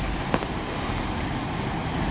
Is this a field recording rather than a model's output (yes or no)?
yes